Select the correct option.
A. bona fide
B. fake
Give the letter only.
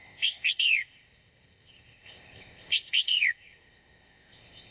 B